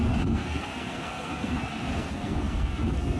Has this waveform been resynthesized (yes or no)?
yes